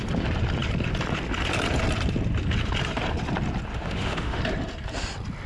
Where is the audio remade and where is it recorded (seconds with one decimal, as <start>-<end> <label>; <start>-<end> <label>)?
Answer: 0.0-3.7 recorded; 3.7-4.4 remade; 4.4-5.5 recorded